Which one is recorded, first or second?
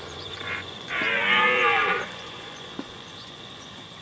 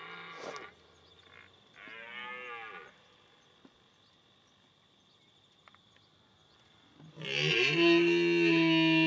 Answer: second